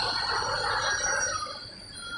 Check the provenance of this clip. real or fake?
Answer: real